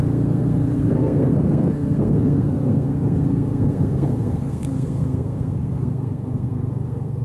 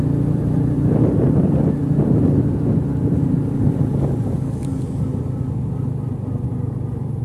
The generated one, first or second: first